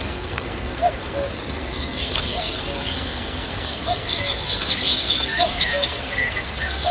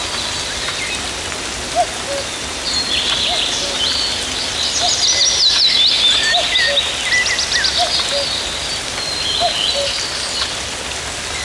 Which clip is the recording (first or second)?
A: second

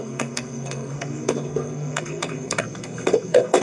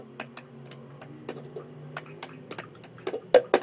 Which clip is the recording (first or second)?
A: second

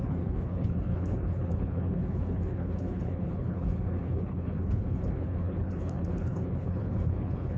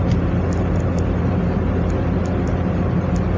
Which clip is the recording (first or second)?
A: second